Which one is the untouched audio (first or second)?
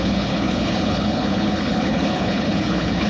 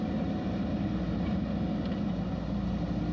second